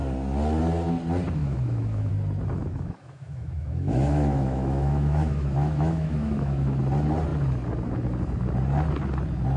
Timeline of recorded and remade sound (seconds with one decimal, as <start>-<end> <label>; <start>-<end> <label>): 0.0-1.4 recorded; 1.4-2.1 remade; 2.1-2.6 recorded; 2.6-6.8 remade; 6.8-9.6 recorded